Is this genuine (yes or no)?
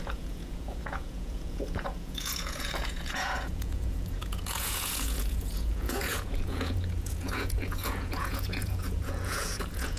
no